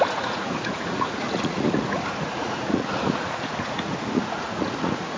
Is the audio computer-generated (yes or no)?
yes